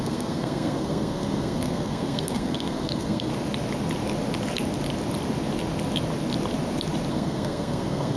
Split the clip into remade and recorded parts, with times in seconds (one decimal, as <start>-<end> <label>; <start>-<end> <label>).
0.0-3.3 remade; 3.3-7.1 recorded; 7.1-8.2 remade